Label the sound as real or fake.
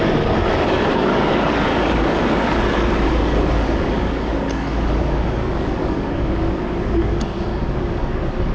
fake